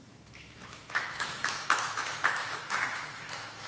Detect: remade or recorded remade